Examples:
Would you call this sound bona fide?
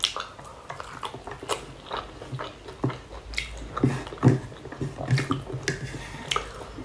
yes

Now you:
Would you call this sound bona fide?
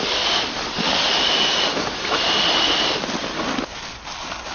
yes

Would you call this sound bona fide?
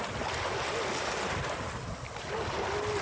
yes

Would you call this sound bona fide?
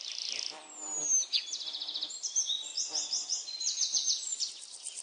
yes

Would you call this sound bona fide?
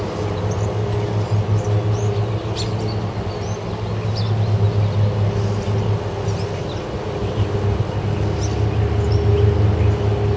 yes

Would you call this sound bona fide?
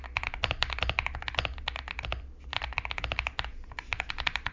yes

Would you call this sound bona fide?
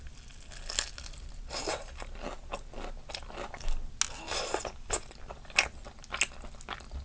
yes